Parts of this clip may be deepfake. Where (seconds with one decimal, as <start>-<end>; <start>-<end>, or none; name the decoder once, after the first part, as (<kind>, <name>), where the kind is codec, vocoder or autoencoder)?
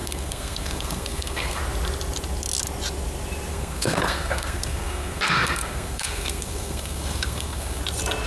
0.0-1.6 (codec, SNAC); 3.5-7.8